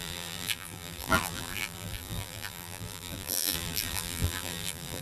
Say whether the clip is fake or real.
fake